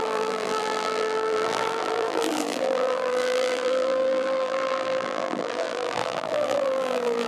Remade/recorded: remade